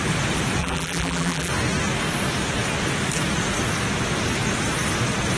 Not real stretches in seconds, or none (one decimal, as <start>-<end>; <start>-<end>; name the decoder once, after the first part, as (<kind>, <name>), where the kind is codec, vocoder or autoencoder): 0.6-1.5 (vocoder, BigVGAN v2)